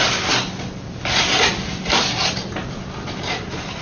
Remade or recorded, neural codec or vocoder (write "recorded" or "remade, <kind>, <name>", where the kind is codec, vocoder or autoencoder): recorded